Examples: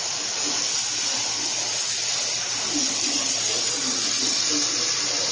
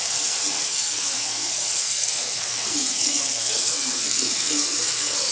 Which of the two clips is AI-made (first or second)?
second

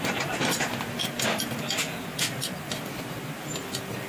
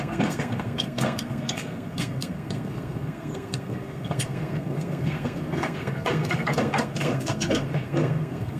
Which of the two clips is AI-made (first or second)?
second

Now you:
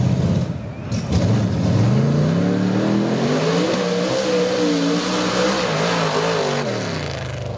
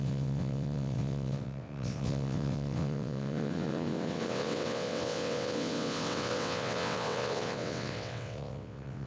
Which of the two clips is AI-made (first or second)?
second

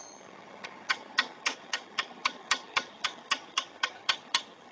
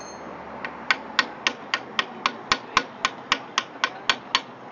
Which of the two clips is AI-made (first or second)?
first